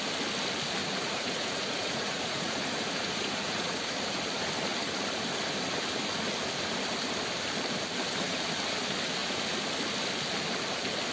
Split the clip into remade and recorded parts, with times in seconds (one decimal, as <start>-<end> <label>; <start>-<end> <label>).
0.0-0.8 recorded; 0.8-3.9 remade; 3.9-11.1 recorded